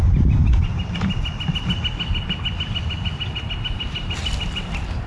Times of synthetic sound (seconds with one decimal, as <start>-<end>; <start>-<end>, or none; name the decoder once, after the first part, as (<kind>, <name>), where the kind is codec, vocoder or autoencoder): none